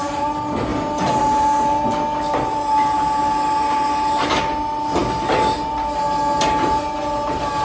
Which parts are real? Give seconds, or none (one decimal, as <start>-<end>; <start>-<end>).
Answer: 0.0-7.6